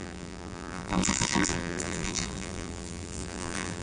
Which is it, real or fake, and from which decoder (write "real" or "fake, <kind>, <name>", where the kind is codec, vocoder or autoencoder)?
fake, vocoder, BigVGAN v2